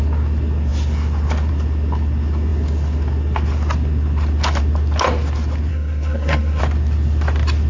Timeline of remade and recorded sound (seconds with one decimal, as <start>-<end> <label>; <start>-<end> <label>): 0.0-5.7 recorded; 5.7-6.6 remade; 6.6-7.7 recorded